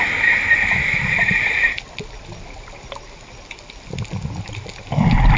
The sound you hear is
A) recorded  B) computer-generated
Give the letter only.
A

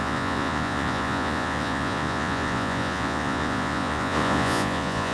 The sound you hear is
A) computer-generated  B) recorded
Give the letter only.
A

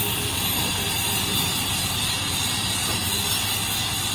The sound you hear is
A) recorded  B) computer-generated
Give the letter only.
A